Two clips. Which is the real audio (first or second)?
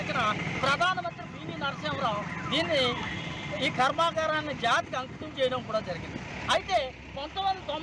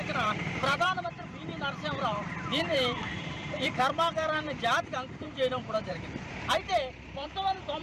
first